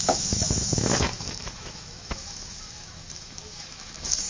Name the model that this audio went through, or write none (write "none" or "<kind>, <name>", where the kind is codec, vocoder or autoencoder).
autoencoder, DAC-VAE